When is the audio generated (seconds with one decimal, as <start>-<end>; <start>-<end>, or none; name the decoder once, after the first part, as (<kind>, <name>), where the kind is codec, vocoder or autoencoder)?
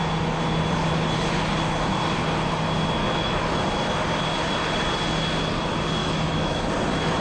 3.0-3.6 (autoencoder, DAC-VAE); 6.0-6.7